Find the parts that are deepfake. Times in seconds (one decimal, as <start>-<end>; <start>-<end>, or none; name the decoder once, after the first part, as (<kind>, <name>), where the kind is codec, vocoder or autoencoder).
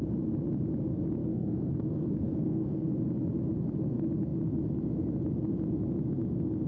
1.2-2.9 (codec, SNAC)